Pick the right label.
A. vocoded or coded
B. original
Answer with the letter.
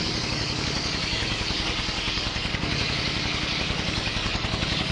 A